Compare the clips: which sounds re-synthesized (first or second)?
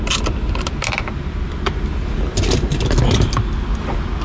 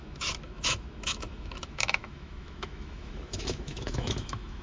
second